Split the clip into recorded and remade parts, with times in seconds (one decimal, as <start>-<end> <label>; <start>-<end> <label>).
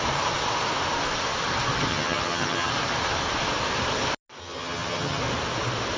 0.0-1.9 recorded; 1.9-2.7 remade; 2.7-4.4 recorded; 4.4-5.2 remade; 5.2-6.0 recorded